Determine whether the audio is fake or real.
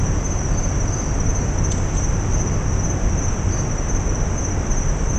real